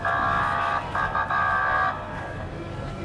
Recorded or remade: remade